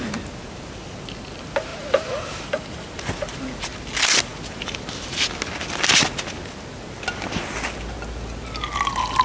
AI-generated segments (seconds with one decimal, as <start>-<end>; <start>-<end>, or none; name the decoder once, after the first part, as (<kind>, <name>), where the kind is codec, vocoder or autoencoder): none